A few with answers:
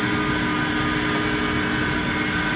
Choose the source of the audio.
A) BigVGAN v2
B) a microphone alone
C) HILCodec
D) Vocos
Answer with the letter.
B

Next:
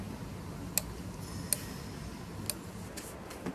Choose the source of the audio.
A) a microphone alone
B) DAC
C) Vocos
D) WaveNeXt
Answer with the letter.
A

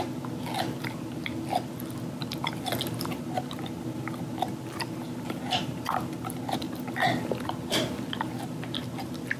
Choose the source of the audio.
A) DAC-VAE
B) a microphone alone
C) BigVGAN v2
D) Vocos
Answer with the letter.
B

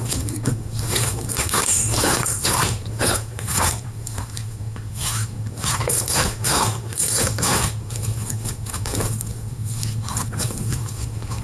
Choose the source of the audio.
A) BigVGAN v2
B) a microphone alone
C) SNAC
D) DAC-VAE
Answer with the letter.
C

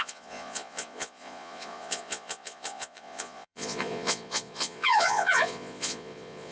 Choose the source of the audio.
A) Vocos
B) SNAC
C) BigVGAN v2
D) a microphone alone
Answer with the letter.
A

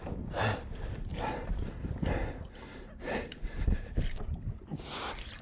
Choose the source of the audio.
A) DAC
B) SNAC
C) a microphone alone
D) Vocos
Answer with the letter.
C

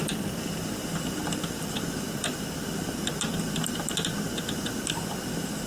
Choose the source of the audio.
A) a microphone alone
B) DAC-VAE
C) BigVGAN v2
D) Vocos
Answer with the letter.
A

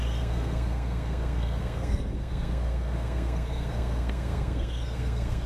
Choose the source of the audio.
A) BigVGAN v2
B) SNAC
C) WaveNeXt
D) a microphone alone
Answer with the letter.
B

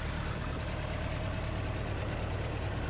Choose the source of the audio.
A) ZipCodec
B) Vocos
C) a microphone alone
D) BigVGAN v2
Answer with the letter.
C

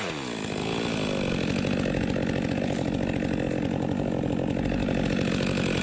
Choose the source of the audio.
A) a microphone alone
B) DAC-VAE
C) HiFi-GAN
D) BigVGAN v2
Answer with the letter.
A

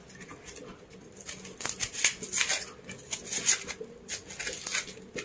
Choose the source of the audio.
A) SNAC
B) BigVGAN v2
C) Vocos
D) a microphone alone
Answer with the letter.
D